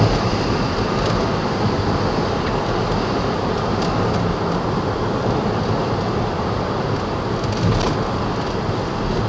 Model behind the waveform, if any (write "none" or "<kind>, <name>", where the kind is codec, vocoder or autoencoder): none